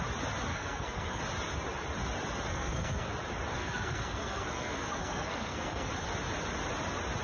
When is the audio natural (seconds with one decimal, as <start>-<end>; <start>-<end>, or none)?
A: 0.0-0.5; 1.2-2.5; 3.1-3.6; 5.9-7.2